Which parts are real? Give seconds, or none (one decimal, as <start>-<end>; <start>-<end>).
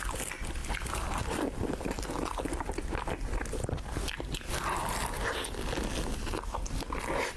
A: 0.0-7.4